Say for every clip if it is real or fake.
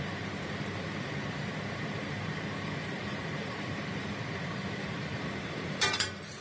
fake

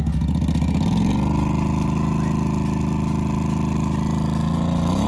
real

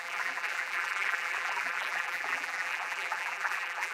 fake